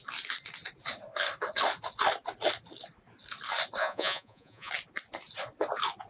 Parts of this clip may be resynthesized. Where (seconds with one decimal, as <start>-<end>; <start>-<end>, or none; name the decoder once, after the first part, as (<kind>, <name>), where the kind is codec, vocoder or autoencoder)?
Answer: 3.8-4.7 (vocoder, Vocos)